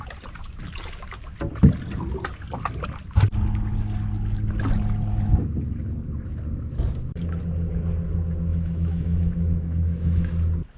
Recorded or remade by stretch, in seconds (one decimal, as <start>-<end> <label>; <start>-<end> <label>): 0.0-8.5 recorded; 8.5-10.2 remade; 10.2-10.8 recorded